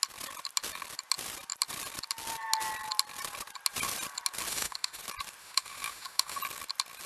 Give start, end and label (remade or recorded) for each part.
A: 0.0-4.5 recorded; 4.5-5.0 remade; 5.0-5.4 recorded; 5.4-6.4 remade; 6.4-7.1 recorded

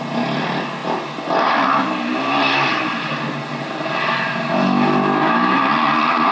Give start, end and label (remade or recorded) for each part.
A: 0.0-6.3 recorded

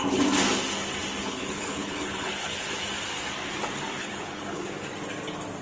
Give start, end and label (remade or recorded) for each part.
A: 0.0-1.2 recorded; 1.2-2.8 remade; 2.8-4.0 recorded; 4.0-4.6 remade; 4.6-5.6 recorded

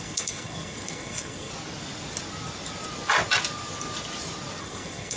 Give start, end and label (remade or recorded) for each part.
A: 0.0-1.5 remade; 1.5-4.6 recorded; 4.6-5.2 remade